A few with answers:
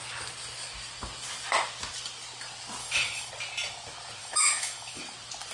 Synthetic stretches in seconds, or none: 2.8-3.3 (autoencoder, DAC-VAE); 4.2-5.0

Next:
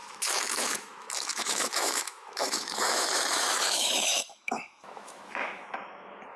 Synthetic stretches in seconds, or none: 0.0-6.4 (autoencoder, DAC-VAE)

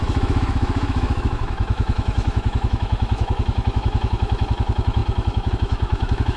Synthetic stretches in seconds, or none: 0.0-6.4 (autoencoder, DAC-VAE)

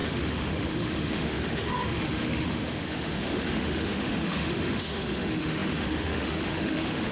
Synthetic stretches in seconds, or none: 0.0-7.1 (autoencoder, DAC-VAE)

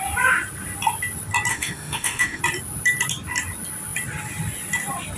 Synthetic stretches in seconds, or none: 1.5-2.4 (autoencoder, DAC-VAE)

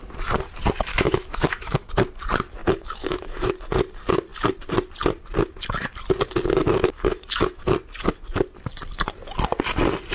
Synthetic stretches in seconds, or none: 0.9-1.9 (autoencoder, DAC-VAE); 2.6-3.5; 6.7-7.6

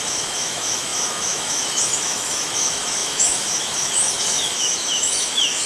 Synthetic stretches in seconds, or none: 0.0-5.7 (autoencoder, DAC-VAE)